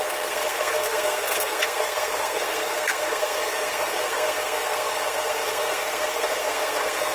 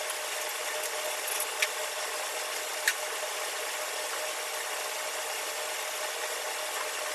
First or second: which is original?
second